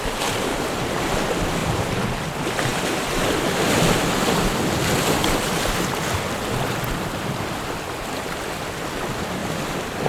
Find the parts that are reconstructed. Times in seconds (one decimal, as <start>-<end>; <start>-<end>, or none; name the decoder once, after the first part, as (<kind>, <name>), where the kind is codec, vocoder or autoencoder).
0.5-1.1 (vocoder, BigVGAN v2); 1.6-2.2; 9.4-10.1